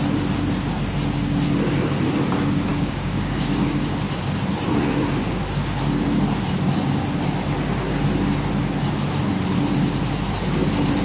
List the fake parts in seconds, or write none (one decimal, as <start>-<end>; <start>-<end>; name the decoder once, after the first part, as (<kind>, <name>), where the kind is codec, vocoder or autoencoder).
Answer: 2.7-3.6 (codec, DAC)